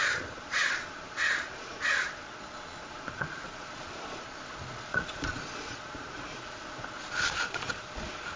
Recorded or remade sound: remade